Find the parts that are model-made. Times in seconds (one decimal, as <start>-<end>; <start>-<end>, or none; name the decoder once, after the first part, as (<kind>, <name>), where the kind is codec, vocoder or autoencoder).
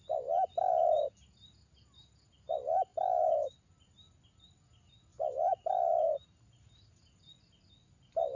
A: 2.9-3.5 (vocoder, BigVGAN v2); 5.1-5.7